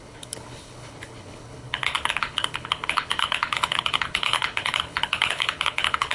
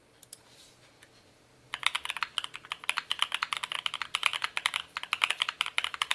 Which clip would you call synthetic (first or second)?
first